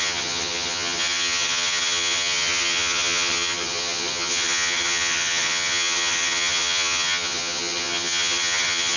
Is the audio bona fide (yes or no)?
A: no